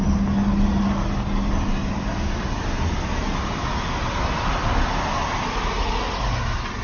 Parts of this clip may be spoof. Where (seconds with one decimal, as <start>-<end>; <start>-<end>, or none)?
none